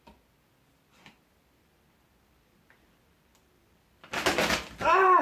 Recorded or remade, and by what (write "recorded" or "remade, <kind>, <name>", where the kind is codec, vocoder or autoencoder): recorded